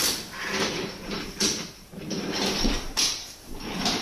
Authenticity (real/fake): fake